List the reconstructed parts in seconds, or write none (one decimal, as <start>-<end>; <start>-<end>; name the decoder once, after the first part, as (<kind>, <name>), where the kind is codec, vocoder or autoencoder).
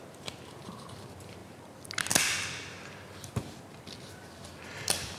none